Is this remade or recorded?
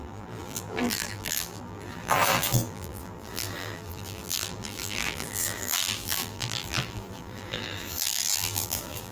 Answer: remade